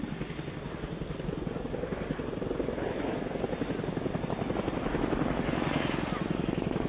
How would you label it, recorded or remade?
recorded